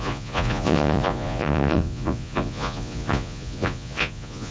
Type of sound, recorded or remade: remade